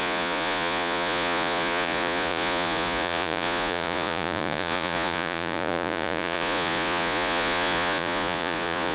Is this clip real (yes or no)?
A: no